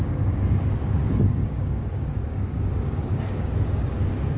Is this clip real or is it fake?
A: fake